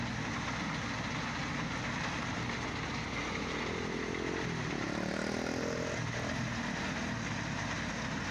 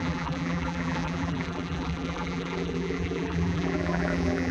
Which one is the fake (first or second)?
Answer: second